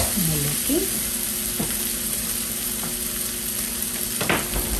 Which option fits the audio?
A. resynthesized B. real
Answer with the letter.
B